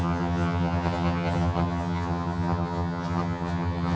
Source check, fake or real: fake